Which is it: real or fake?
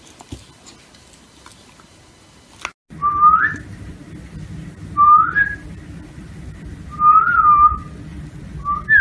real